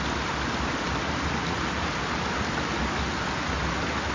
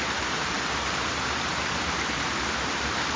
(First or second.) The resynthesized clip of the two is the second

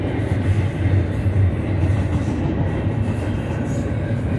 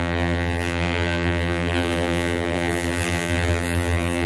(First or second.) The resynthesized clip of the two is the second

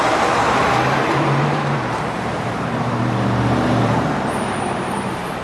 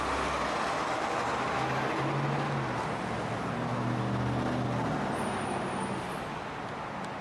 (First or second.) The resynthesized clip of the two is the first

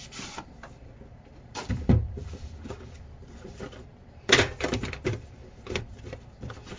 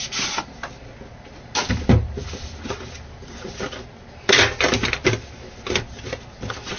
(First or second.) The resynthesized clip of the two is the first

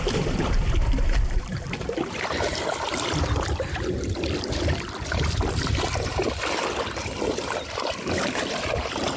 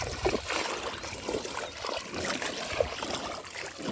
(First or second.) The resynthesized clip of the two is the first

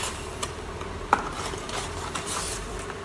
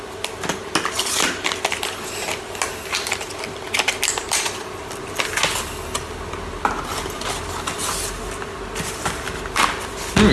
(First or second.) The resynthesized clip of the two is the first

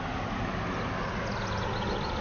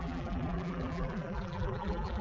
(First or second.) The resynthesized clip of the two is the second